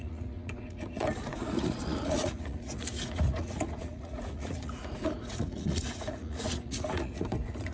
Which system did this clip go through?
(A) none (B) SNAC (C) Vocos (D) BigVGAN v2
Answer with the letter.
C